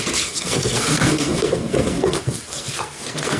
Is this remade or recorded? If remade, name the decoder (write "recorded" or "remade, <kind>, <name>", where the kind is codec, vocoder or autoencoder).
remade, codec, SNAC